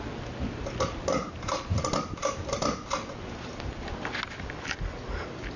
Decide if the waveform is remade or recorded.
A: recorded